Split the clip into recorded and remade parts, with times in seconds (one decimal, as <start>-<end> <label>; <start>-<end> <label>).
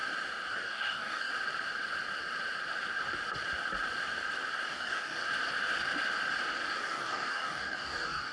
0.0-0.5 recorded; 0.5-1.3 remade; 1.3-4.7 recorded; 4.7-5.2 remade; 5.2-6.7 recorded; 6.7-8.3 remade